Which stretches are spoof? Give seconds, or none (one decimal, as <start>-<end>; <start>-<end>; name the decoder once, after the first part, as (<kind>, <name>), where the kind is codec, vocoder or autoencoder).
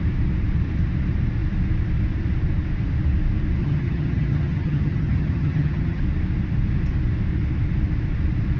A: 3.6-6.0 (vocoder, HiFi-GAN)